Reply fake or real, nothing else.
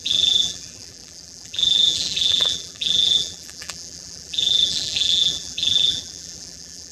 fake